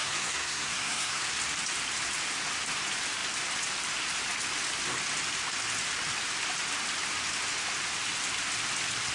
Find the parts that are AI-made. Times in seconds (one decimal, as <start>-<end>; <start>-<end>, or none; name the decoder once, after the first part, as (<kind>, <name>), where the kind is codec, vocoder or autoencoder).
0.0-1.2 (codec, SNAC)